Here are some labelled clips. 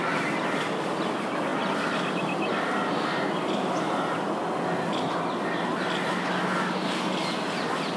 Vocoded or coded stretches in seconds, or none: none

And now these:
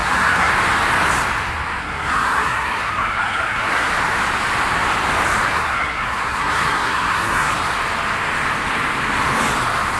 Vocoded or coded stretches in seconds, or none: 0.0-0.5 (codec, SNAC); 1.8-3.9; 5.5-7.5